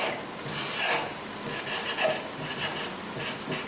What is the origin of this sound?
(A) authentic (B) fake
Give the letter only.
A